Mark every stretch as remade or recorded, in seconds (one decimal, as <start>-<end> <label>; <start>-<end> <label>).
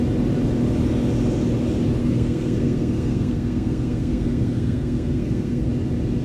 0.0-2.0 recorded; 2.0-5.7 remade; 5.7-6.2 recorded